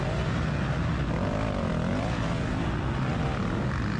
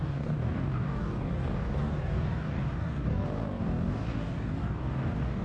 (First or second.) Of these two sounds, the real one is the first